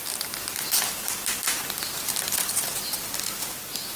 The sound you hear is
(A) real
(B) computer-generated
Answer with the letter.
A